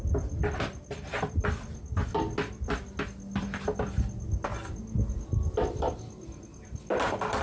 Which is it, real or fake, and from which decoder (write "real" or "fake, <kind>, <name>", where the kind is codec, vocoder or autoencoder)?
real